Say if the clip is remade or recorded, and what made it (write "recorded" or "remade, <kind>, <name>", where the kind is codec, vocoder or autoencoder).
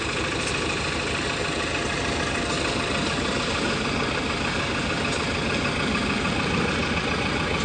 recorded